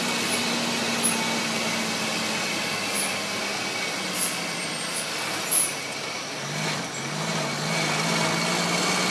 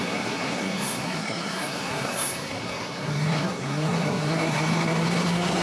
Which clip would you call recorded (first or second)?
first